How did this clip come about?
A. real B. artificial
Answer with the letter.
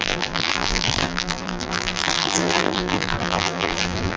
B